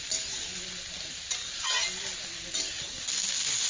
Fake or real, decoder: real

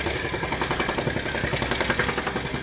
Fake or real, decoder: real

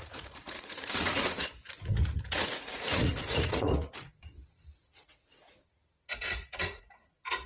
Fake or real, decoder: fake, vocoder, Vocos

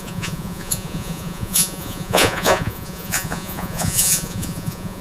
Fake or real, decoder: fake, vocoder, Vocos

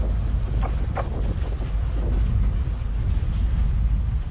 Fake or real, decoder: real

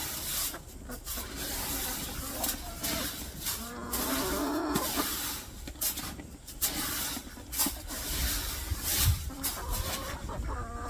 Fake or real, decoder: real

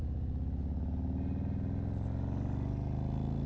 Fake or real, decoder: real